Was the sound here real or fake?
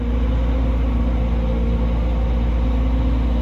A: real